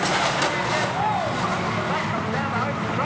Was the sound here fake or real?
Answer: real